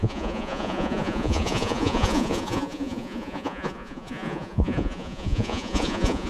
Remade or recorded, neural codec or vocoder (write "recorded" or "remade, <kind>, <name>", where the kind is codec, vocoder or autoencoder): remade, vocoder, Vocos